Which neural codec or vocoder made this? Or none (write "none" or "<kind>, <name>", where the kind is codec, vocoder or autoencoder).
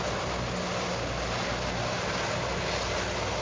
none